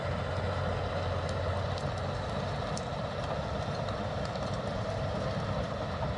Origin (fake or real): real